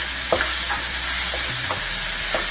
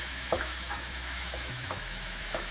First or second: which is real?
first